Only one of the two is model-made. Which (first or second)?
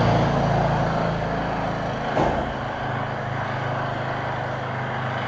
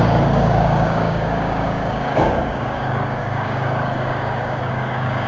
second